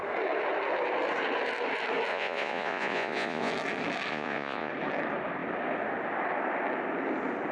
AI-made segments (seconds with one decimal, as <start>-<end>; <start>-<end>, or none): 2.1-3.5; 4.1-4.7